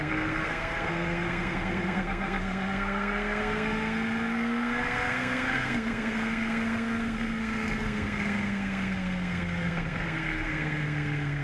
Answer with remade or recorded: remade